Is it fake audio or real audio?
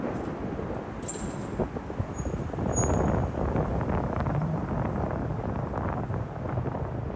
real